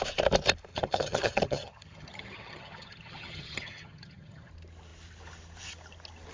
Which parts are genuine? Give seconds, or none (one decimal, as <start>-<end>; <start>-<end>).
0.0-0.7; 4.5-6.3